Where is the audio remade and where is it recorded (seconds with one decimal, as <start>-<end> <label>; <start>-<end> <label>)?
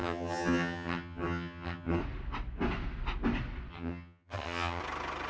0.0-2.0 remade; 2.0-3.7 recorded; 3.7-4.8 remade; 4.8-5.3 recorded